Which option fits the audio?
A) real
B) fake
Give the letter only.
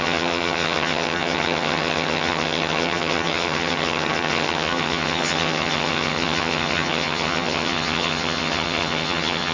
B